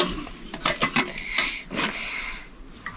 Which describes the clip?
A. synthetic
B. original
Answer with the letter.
B